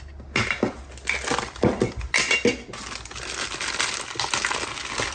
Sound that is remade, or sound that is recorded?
recorded